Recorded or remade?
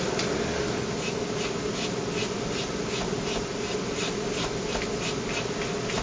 recorded